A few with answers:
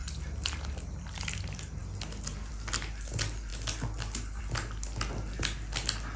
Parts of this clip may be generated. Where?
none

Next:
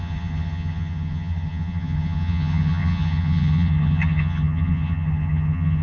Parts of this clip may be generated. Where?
0.0-5.8 (vocoder, HiFi-GAN)

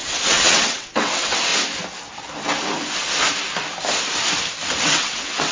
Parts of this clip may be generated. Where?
0.0-1.5 (vocoder, WaveNeXt); 4.8-5.5